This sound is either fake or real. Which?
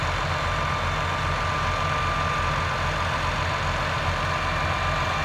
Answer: real